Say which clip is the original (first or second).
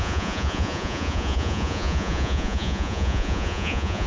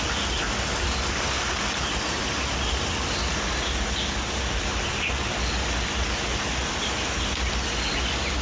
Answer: second